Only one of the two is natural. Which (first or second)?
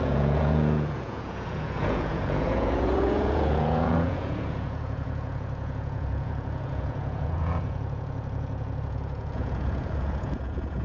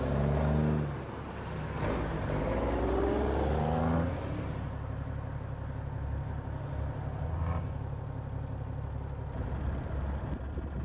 second